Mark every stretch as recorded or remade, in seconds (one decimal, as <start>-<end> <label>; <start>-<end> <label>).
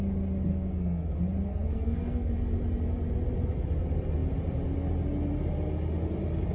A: 0.0-0.5 recorded; 0.5-1.1 remade; 1.1-1.5 recorded; 1.5-2.3 remade; 2.3-6.5 recorded